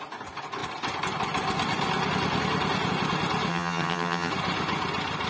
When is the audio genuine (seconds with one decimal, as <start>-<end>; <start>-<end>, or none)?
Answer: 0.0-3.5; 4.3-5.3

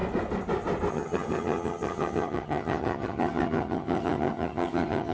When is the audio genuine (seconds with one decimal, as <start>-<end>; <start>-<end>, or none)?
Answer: 0.0-0.9

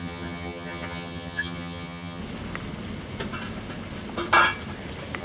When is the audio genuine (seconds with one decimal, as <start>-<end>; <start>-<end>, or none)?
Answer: 2.2-5.2

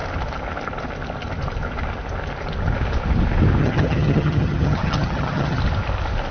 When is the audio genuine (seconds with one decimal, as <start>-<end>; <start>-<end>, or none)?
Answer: 0.0-3.6; 5.6-6.3